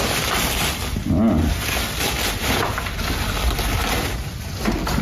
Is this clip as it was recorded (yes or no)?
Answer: yes